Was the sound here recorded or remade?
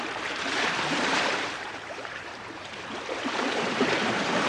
remade